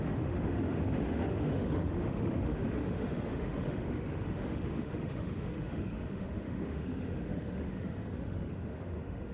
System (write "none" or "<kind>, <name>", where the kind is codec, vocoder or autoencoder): autoencoder, DAC-VAE